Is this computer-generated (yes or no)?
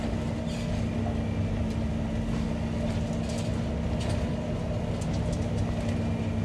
no